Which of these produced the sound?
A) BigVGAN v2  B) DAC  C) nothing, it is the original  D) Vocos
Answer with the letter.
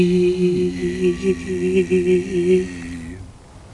C